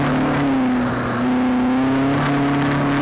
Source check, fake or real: real